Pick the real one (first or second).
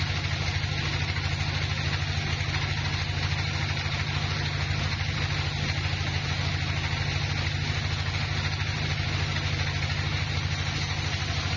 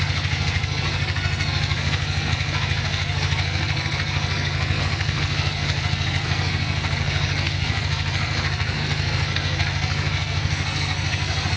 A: first